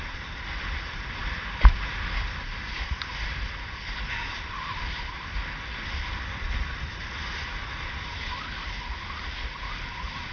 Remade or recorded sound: recorded